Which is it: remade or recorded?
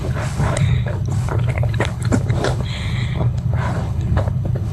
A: remade